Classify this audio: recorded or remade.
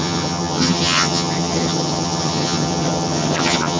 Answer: remade